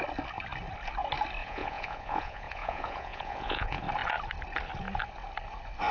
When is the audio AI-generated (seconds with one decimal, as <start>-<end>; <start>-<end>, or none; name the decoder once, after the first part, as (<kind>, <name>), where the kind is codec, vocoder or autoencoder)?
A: 1.4-3.8 (vocoder, Vocos)